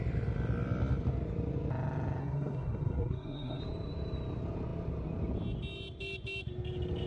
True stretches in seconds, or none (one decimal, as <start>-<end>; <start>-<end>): 0.0-2.2; 3.6-7.1